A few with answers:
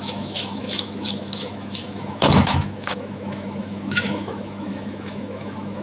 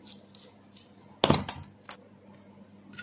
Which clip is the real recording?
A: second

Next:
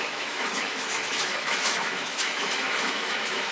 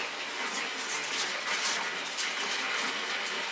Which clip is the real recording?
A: second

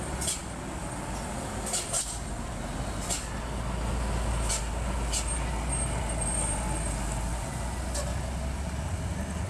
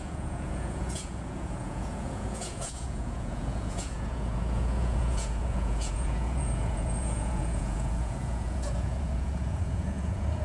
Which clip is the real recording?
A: first